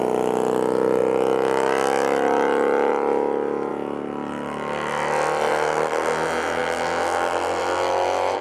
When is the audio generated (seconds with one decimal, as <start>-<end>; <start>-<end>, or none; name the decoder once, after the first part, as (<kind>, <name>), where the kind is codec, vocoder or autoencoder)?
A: none